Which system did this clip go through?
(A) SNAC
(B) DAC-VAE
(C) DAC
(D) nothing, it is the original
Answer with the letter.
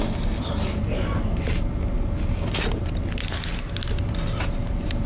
D